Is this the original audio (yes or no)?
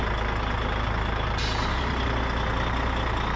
yes